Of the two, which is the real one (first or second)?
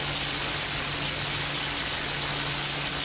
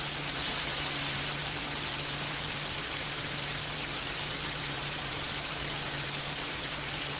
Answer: first